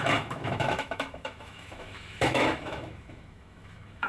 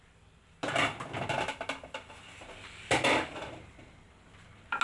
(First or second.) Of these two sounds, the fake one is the first